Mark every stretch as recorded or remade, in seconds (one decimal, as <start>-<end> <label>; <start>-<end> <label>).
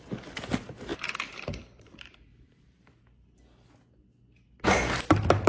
0.0-0.9 recorded; 0.9-3.0 remade; 3.0-5.5 recorded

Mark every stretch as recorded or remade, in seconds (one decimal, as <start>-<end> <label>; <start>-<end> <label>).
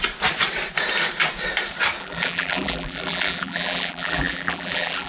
0.0-2.0 recorded; 2.0-5.1 remade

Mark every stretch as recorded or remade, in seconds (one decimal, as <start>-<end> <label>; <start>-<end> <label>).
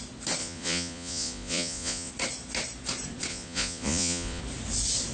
0.0-0.4 recorded; 0.4-2.1 remade; 2.1-3.3 recorded; 3.3-4.4 remade; 4.4-5.1 recorded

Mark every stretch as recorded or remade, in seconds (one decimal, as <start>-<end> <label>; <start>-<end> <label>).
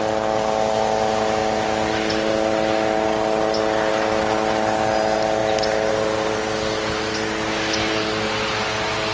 0.0-9.1 recorded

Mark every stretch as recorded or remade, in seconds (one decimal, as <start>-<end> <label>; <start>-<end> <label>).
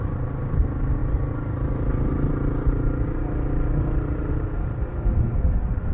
0.0-4.8 remade; 4.8-5.9 recorded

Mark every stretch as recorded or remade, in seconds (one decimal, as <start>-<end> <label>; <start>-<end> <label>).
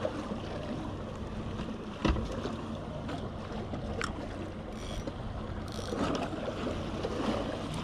0.0-7.8 recorded